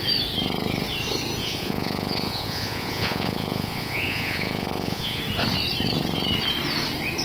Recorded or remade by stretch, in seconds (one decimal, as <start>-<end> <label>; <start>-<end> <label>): 0.0-1.4 recorded; 1.4-5.2 remade; 5.2-7.2 recorded